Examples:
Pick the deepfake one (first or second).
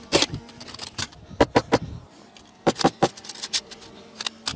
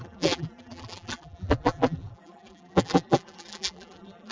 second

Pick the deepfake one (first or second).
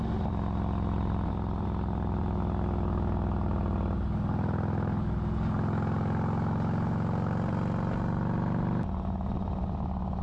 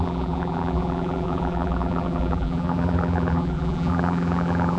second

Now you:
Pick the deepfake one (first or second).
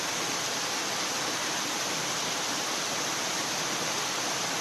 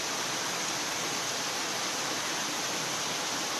first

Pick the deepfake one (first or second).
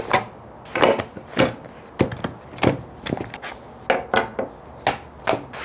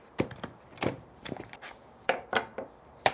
second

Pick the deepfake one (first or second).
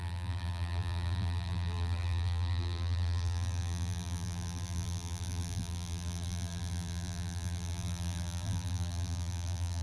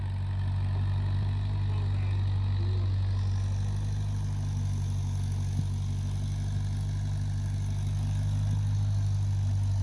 first